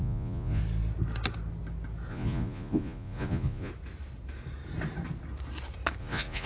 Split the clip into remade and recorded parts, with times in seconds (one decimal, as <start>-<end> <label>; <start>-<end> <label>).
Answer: 0.0-0.6 remade; 0.6-2.1 recorded; 2.1-3.7 remade; 3.7-6.0 recorded; 6.0-6.5 remade